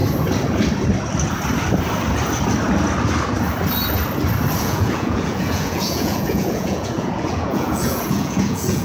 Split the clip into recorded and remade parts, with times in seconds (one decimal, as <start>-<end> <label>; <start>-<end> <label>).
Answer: 0.0-4.6 recorded; 4.6-8.8 remade